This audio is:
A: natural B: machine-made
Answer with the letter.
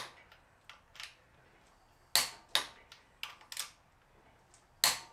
A